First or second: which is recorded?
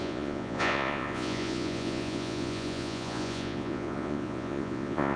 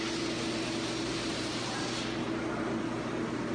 second